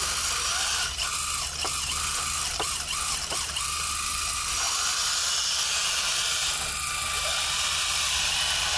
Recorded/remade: recorded